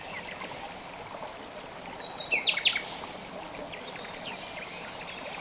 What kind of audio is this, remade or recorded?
recorded